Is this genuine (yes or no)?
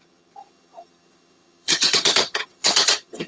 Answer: no